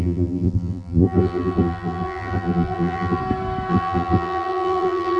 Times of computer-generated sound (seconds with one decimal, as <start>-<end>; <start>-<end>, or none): 0.0-3.2; 3.7-5.2